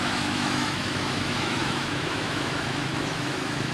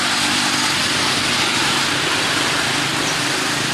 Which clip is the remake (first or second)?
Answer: first